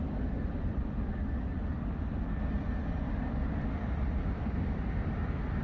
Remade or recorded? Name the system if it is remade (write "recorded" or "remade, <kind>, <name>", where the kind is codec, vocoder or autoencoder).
recorded